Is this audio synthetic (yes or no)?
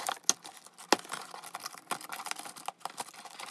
no